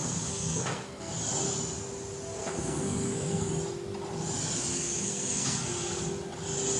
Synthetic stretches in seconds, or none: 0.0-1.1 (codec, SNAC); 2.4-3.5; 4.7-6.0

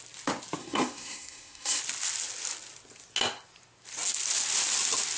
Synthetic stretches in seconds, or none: 0.6-1.8 (codec, SNAC)

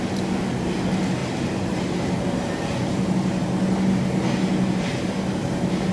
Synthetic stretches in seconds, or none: none

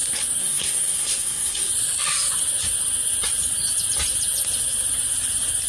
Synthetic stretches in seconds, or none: 0.4-1.7 (codec, SNAC)

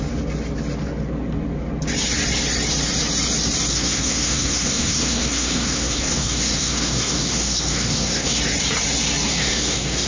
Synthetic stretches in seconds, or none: 3.7-8.4 (codec, SNAC); 9.3-10.1